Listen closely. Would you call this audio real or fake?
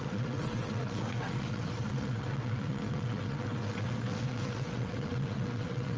fake